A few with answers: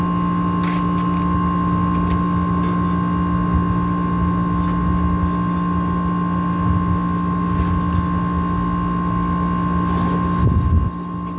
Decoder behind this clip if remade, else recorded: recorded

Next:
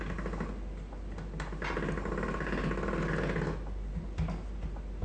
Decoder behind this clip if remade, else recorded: recorded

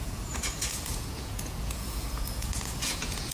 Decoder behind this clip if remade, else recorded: remade, vocoder, Vocos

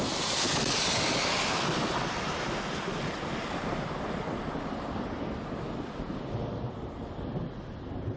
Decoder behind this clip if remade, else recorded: recorded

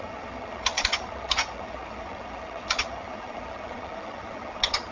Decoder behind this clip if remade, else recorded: remade, vocoder, HiFi-GAN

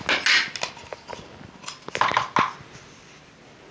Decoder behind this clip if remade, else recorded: recorded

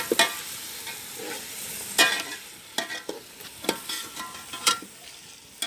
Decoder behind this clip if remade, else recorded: recorded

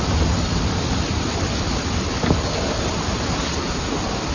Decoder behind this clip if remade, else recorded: recorded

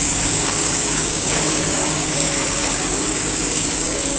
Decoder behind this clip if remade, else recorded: remade, codec, DAC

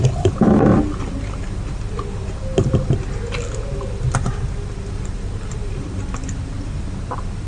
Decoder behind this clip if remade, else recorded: remade, vocoder, BigVGAN v2